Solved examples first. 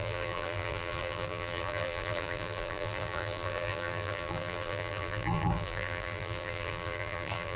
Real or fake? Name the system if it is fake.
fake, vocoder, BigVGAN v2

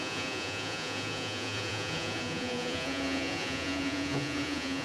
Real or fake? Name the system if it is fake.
fake, vocoder, Vocos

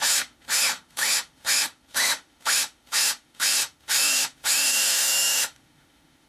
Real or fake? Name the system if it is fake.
fake, autoencoder, DAC-VAE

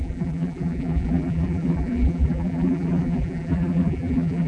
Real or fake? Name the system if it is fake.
fake, vocoder, BigVGAN v2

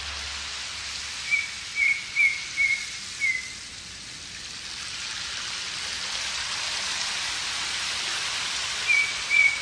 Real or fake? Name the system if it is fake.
real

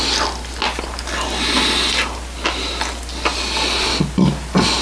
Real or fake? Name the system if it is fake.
real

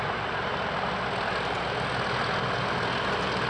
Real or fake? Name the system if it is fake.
real